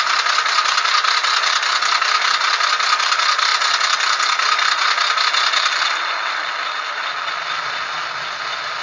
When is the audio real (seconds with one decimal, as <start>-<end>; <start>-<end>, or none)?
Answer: 0.0-8.8